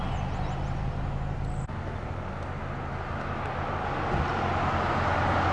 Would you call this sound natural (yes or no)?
yes